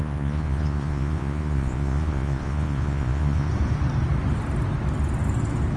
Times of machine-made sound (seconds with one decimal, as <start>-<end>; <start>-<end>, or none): 0.0-3.5